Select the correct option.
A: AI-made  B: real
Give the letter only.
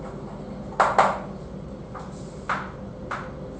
B